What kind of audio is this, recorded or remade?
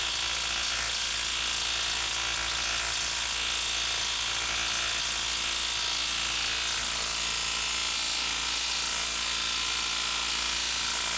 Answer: recorded